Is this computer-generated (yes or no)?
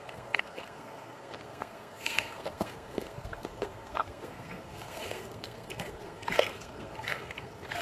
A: yes